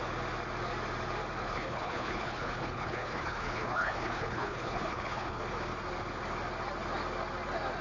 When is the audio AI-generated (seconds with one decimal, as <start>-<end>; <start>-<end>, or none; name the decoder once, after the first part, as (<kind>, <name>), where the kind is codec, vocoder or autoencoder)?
1.4-5.4 (codec, HILCodec)